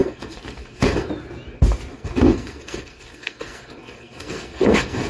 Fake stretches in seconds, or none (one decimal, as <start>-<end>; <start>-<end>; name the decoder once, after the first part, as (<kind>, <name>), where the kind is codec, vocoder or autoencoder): 0.0-1.1 (codec, SNAC); 1.9-5.1